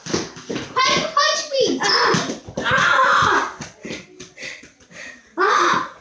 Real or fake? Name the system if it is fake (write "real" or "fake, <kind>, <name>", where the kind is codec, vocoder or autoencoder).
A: real